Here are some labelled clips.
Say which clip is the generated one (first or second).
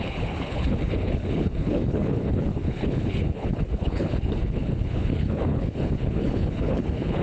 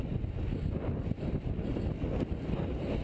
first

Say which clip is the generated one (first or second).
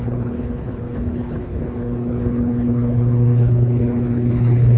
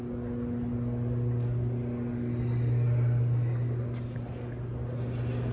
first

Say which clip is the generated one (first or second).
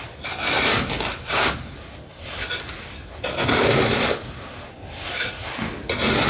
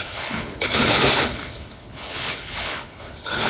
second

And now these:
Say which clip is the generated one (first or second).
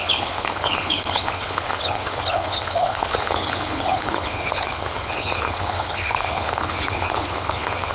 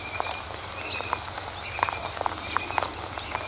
first